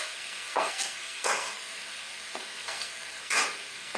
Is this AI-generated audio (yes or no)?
yes